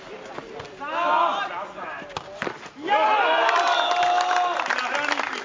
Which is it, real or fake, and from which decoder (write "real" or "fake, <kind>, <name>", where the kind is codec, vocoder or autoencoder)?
real